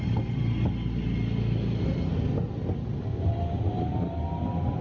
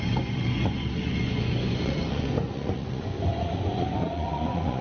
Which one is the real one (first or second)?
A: first